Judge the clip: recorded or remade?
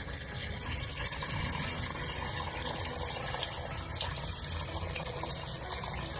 recorded